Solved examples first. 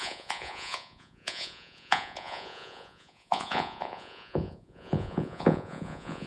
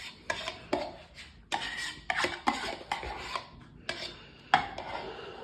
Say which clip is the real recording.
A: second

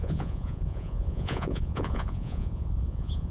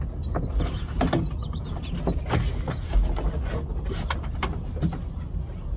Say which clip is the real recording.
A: second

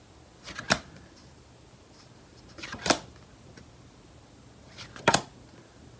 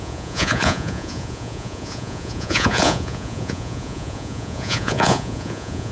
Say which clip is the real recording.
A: first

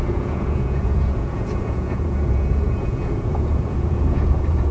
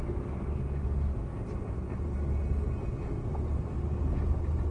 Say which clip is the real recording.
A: second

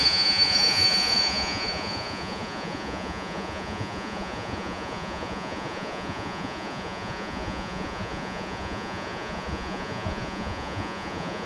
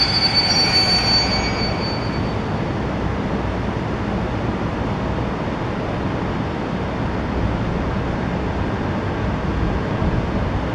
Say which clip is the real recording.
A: second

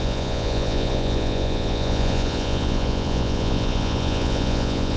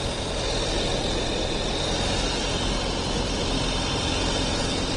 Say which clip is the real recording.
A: second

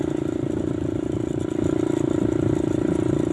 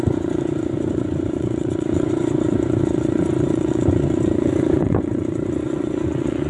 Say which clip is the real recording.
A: first